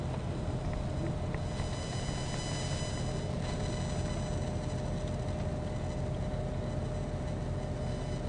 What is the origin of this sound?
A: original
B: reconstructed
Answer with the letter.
A